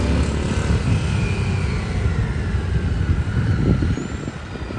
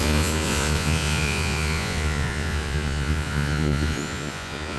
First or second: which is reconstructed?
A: second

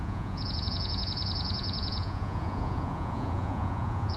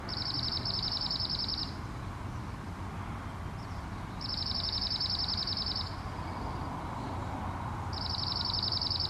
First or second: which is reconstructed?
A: first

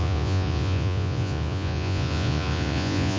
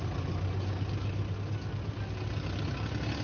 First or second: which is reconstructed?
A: first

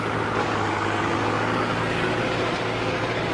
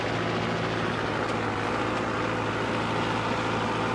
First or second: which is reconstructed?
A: first